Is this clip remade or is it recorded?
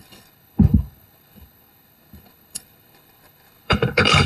remade